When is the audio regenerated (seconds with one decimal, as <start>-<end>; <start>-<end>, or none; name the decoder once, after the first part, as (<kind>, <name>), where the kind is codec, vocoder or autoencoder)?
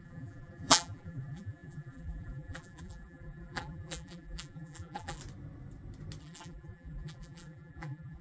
0.0-5.2 (vocoder, BigVGAN v2); 6.2-8.2